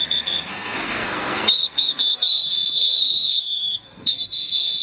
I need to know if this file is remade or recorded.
remade